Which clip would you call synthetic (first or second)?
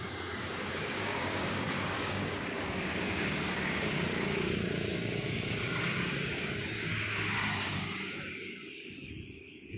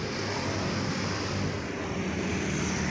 first